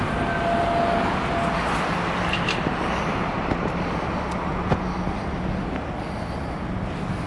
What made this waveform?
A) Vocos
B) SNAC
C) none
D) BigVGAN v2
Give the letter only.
C